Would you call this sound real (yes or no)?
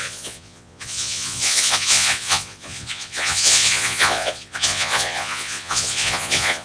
no